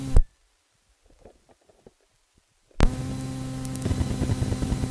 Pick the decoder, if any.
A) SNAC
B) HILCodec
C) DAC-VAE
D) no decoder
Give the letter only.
D